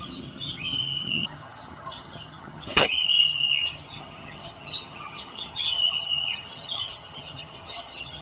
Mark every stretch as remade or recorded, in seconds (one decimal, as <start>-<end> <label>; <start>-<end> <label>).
0.0-8.2 remade